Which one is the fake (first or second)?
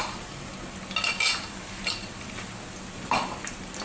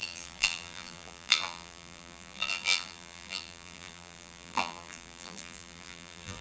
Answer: second